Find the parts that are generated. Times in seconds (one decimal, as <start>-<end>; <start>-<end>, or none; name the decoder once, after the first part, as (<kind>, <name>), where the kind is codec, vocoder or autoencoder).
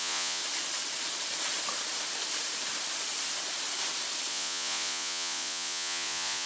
0.0-0.4 (vocoder, Vocos); 4.3-6.5